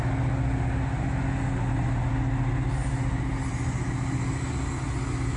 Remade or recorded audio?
recorded